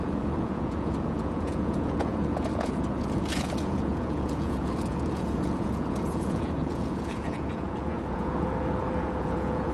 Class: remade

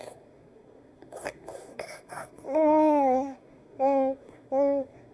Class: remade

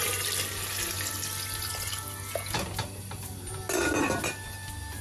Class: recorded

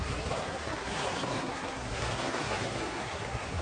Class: remade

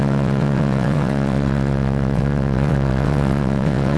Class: remade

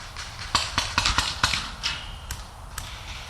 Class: recorded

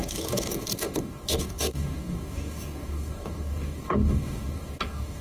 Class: remade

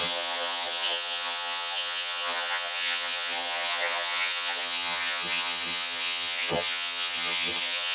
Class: remade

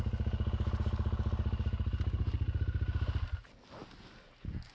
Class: recorded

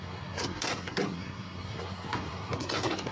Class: remade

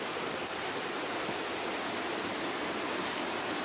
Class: remade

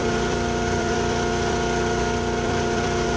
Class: remade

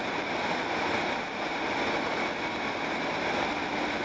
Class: recorded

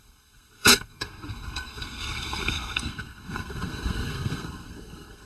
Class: remade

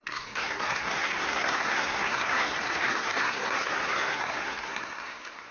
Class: remade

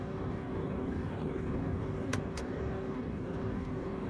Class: remade